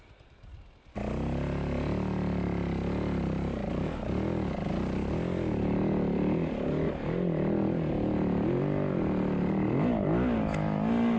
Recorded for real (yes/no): yes